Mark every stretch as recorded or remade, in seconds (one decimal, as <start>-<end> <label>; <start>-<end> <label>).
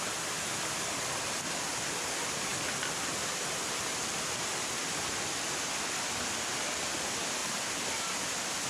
0.0-8.7 recorded